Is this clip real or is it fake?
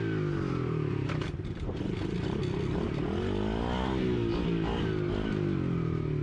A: real